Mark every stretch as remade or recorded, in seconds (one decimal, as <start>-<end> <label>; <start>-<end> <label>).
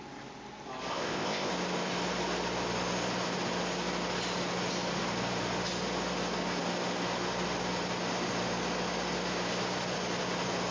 0.0-0.9 recorded; 0.9-1.5 remade; 1.5-10.7 recorded